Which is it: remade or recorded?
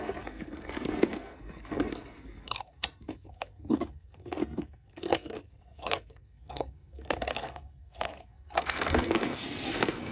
remade